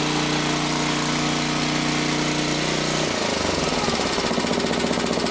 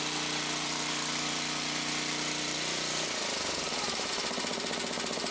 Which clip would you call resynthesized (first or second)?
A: second